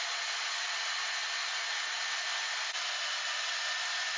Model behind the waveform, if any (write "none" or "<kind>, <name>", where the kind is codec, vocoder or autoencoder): none